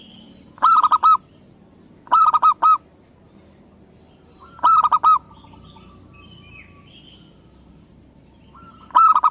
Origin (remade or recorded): recorded